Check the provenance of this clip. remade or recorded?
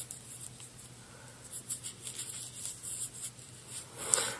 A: recorded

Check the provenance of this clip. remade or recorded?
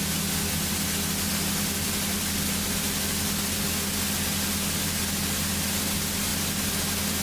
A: recorded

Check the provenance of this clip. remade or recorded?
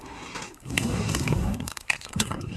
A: remade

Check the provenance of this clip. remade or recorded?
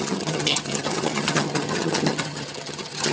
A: remade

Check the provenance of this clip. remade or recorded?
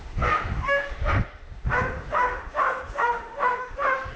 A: remade